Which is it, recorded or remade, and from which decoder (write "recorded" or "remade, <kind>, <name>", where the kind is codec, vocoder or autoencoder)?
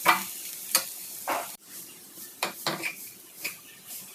remade, vocoder, BigVGAN v2